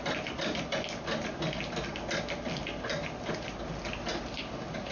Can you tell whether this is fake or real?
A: real